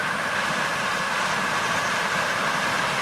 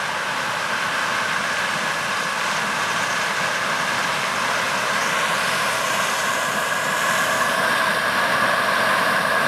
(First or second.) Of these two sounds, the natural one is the second